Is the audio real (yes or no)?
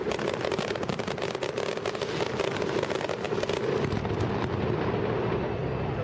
yes